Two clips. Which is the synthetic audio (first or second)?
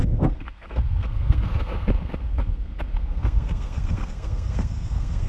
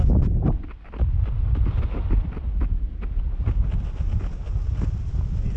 first